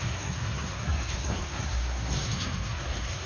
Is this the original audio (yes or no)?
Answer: no